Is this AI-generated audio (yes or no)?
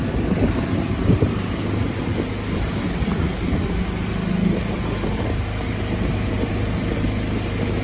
no